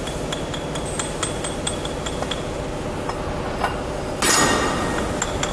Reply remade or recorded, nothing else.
recorded